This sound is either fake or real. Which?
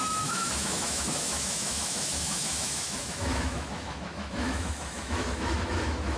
fake